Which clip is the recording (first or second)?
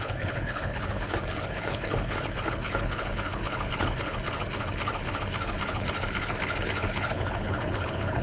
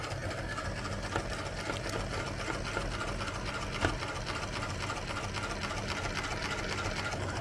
second